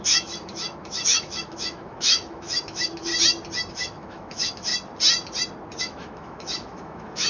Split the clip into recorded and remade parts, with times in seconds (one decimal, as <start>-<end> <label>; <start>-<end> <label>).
0.0-3.1 remade; 3.1-3.7 recorded; 3.7-4.7 remade; 4.7-5.8 recorded; 5.8-7.3 remade